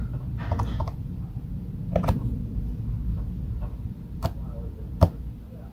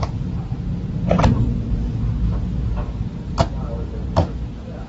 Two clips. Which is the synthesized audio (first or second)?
first